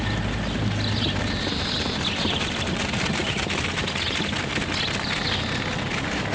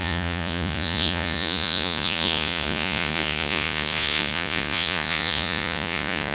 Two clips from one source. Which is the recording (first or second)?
first